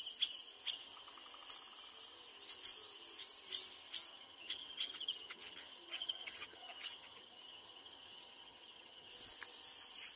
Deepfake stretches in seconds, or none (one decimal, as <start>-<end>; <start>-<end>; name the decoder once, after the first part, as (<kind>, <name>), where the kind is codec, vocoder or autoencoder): 4.1-9.1 (vocoder, HiFi-GAN)